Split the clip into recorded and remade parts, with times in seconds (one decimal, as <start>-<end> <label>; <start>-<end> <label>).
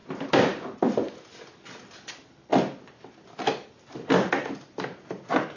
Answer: 0.0-2.1 recorded; 2.1-2.5 remade; 2.5-3.7 recorded; 3.7-5.6 remade